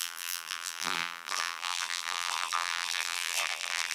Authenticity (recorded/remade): remade